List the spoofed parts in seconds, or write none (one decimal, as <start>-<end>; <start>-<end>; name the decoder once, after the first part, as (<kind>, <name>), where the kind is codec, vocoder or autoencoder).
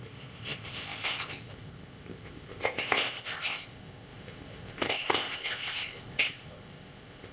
0.0-7.3 (codec, ZipCodec)